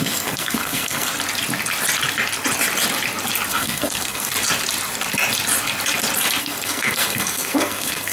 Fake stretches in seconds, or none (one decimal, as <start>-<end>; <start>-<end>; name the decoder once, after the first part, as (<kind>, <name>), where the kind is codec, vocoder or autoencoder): 0.0-1.1 (codec, SNAC); 3.5-4.3; 6.4-8.1